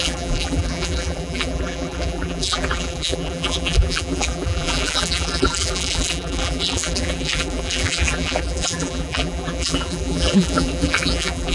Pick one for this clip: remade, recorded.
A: remade